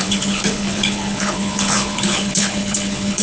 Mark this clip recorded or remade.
remade